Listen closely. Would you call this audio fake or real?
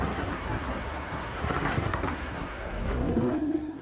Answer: fake